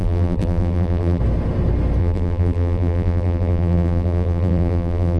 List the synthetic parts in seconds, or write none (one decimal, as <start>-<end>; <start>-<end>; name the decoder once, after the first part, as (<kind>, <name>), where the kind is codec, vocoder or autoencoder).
0.0-1.2 (vocoder, BigVGAN v2); 2.0-5.2